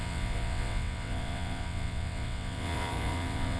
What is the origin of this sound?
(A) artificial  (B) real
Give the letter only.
A